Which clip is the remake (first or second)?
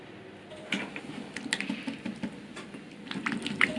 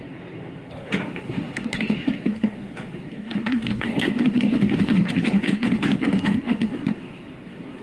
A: second